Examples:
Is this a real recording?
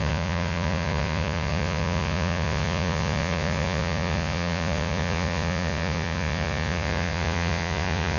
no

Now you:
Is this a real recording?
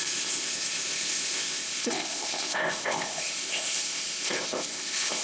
no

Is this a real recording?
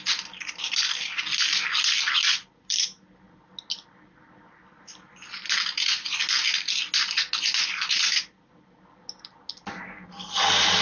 yes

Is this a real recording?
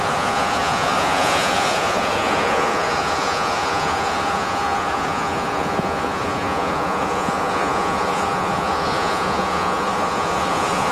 no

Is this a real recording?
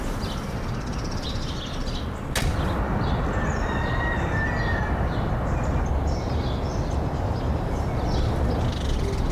yes